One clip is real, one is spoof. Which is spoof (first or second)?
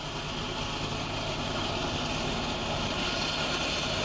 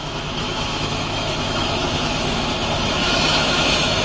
second